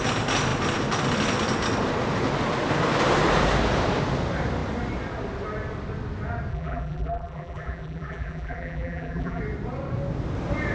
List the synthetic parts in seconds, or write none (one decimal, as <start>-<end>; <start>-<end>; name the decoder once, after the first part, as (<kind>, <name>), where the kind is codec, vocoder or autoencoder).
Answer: 6.5-9.4 (vocoder, BigVGAN v2)